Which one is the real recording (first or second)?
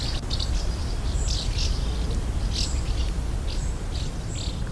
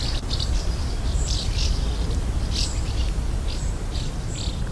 first